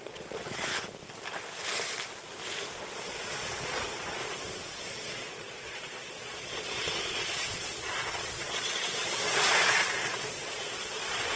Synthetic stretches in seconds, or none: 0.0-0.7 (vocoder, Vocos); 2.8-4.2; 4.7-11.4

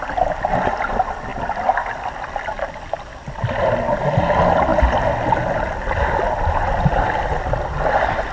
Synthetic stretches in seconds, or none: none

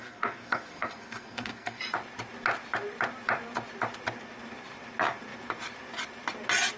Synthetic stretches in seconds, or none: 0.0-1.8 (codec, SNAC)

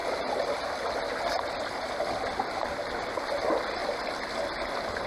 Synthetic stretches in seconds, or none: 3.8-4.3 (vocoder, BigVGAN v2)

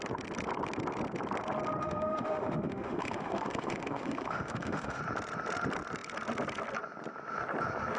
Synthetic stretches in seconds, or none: 1.8-5.0 (autoencoder, DAC-VAE)

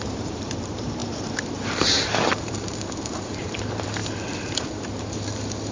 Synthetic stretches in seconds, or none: 0.0-1.0 (vocoder, BigVGAN v2); 1.5-5.7

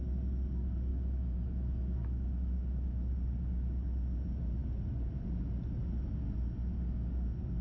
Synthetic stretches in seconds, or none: 0.9-3.1 (autoencoder, DAC-VAE)

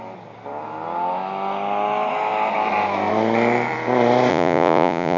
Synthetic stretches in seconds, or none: 4.3-5.2 (vocoder, Vocos)